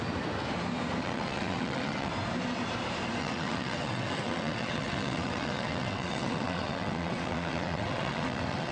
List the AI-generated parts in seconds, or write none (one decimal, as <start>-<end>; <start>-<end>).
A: 1.0-2.1; 3.2-8.7